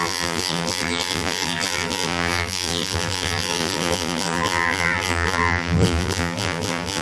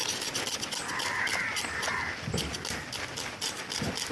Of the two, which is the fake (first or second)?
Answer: first